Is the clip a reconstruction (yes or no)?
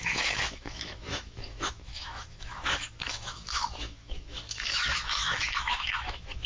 yes